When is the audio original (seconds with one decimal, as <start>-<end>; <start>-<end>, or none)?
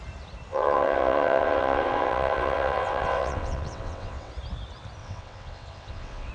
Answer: 0.0-0.5; 4.3-5.0